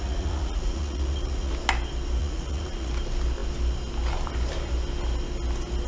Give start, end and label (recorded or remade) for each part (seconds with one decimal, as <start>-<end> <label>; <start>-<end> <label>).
0.0-1.5 remade; 1.5-2.2 recorded; 2.2-2.9 remade; 2.9-5.9 recorded